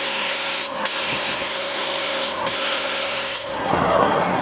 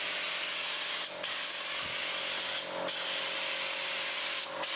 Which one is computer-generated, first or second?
first